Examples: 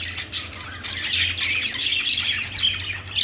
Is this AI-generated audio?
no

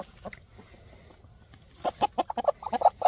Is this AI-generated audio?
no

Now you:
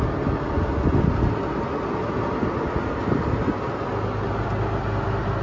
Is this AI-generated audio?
no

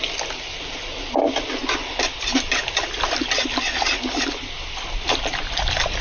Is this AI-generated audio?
no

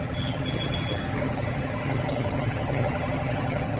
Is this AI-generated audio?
yes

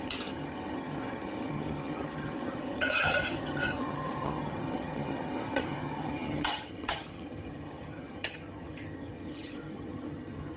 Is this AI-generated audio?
yes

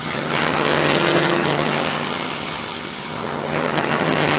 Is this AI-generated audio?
yes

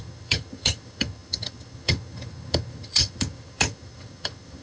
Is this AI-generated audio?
yes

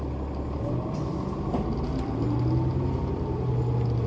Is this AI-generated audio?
no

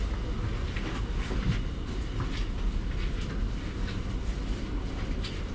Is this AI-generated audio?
no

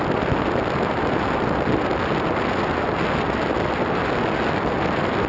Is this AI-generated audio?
no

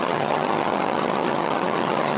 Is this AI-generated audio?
yes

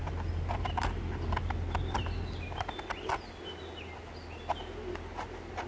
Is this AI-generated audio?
no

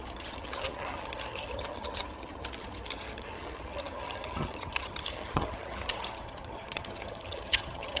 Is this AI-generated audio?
yes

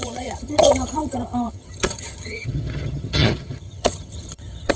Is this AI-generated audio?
yes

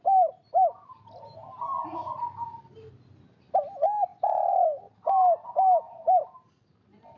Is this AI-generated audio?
no